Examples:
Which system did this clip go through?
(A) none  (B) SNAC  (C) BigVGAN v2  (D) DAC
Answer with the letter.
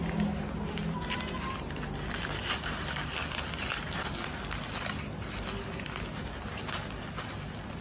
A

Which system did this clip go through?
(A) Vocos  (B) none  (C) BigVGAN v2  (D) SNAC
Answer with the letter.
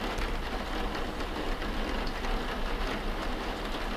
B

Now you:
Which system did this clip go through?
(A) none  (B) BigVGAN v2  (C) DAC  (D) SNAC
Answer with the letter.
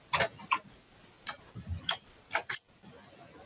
A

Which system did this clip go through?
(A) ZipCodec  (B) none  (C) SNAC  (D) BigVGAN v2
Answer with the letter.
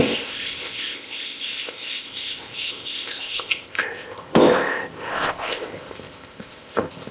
A